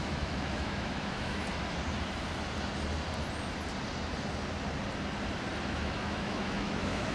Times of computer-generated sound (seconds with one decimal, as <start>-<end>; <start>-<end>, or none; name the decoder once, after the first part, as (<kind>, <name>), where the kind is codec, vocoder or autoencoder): 0.0-1.4 (autoencoder, DAC-VAE); 5.7-7.1

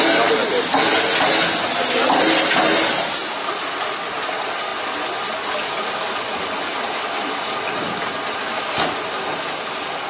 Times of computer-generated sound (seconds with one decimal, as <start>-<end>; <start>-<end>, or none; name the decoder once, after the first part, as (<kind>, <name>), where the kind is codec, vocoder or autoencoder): none

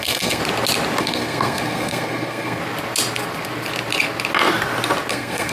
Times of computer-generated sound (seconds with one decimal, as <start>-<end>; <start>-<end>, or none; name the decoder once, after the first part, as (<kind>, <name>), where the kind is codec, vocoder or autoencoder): 0.0-0.4 (codec, SNAC); 1.0-2.6; 5.1-5.5

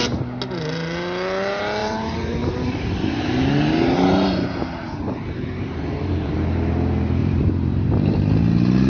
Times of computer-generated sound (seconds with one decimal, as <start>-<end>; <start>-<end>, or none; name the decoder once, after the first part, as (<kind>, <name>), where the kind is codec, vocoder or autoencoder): 1.8-2.9 (vocoder, BigVGAN v2); 5.0-6.3; 7.2-7.9